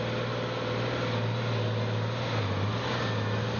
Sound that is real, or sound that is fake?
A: real